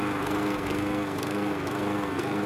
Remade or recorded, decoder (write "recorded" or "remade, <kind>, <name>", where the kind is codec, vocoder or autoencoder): remade, codec, SNAC